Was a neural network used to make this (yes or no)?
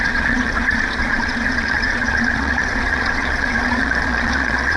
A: yes